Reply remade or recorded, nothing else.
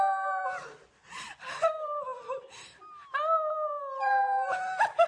recorded